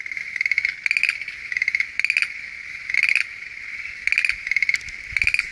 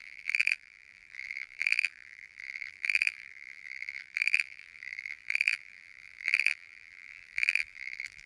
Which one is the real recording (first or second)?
first